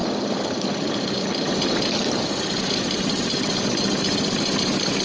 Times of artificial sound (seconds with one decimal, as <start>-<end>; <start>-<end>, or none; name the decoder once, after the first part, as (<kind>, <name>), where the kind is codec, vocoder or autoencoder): none